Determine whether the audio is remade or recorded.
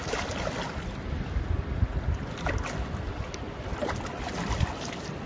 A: recorded